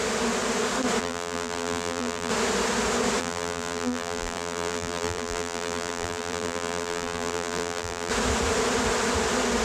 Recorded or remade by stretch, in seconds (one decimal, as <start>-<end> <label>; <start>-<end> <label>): 0.0-1.0 recorded; 1.0-2.3 remade; 2.3-3.2 recorded; 3.2-8.1 remade; 8.1-9.6 recorded